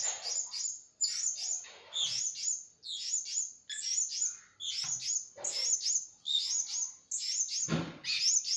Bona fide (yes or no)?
yes